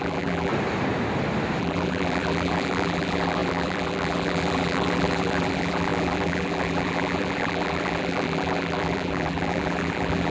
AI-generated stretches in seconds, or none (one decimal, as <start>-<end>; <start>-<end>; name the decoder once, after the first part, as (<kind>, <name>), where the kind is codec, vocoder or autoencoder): 0.0-0.5 (vocoder, BigVGAN v2); 1.6-10.3

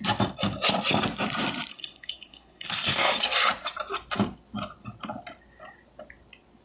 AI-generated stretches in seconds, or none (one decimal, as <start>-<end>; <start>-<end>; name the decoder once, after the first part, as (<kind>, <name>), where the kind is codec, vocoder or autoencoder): 1.7-3.1 (codec, SNAC)

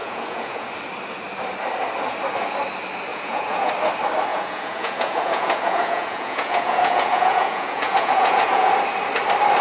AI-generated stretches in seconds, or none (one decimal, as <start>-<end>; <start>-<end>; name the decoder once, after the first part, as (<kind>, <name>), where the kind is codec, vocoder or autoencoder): 0.0-0.7 (vocoder, Vocos); 3.1-3.7; 4.3-8.7

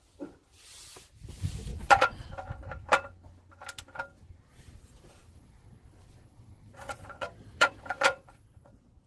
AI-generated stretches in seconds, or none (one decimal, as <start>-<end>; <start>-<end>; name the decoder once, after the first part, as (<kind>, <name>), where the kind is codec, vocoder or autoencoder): 1.7-2.3 (vocoder, Vocos); 4.5-8.7

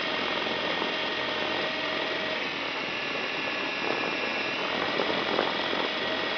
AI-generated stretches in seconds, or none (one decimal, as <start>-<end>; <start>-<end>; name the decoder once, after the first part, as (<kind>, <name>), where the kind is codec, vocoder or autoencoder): none

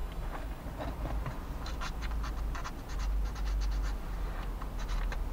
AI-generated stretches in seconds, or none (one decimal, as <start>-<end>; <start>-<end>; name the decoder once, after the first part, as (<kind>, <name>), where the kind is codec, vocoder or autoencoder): 0.0-0.6 (codec, DAC)

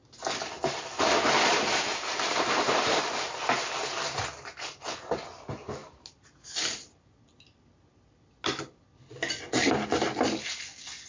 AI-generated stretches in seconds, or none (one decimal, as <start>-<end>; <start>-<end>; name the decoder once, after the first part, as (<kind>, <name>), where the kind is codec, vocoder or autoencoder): 1.9-3.3 (vocoder, BigVGAN v2); 5.8-7.1

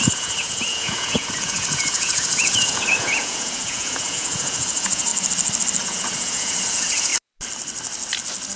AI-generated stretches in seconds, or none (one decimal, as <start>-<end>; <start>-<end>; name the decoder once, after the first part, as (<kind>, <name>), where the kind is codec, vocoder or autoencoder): 0.0-5.1 (vocoder, Vocos); 5.8-7.1